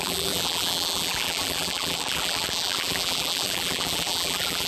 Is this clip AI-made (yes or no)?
yes